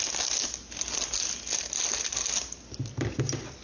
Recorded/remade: recorded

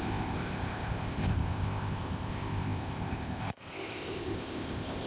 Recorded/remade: remade